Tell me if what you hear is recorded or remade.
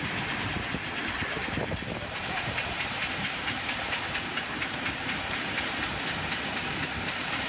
remade